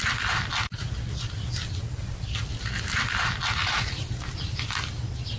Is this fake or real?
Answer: real